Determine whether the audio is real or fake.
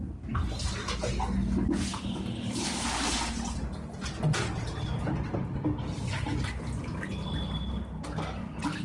real